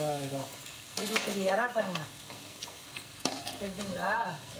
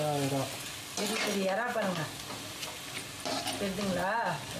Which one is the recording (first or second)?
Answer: second